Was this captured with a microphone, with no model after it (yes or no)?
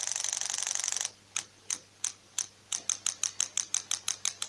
yes